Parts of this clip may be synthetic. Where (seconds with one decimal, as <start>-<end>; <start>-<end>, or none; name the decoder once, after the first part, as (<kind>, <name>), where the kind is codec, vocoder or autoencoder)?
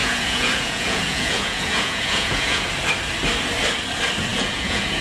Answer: 0.0-2.7 (vocoder, Vocos); 4.3-5.0